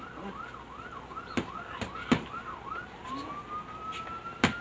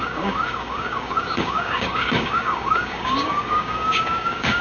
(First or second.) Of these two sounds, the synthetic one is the second